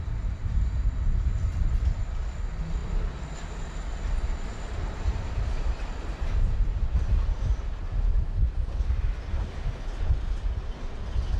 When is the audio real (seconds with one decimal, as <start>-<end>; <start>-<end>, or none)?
0.0-11.4